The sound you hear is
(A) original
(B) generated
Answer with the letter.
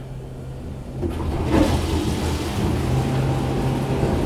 A